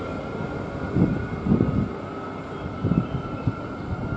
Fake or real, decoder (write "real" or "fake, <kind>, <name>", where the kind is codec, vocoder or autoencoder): real